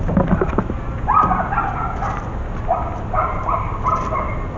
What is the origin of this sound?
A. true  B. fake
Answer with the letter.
A